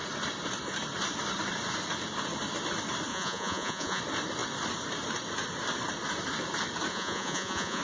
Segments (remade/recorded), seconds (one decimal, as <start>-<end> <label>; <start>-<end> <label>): 0.0-3.1 recorded; 3.1-4.0 remade; 4.0-6.9 recorded; 6.9-7.8 remade